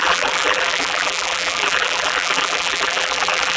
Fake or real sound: fake